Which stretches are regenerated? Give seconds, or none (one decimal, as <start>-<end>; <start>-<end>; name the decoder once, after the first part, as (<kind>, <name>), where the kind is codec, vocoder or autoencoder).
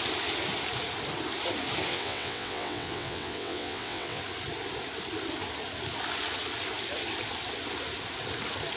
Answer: 1.9-4.2 (vocoder, WaveNeXt)